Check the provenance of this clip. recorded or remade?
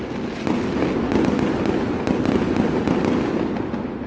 recorded